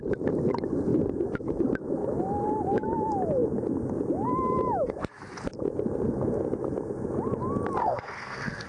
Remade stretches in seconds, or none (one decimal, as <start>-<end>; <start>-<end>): 7.8-8.7